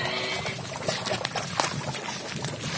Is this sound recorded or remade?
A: recorded